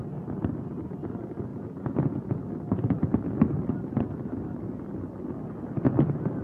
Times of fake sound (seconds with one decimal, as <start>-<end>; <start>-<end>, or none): 1.5-2.4